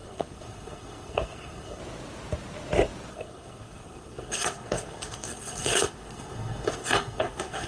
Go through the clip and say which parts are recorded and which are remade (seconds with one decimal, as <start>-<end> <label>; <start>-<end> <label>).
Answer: 0.0-1.8 remade; 1.8-3.1 recorded; 3.1-7.7 remade